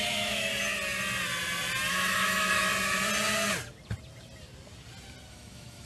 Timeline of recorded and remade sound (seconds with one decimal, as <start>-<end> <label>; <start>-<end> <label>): 0.0-0.5 remade; 0.5-1.9 recorded; 1.9-2.7 remade; 2.7-5.3 recorded; 5.3-5.9 remade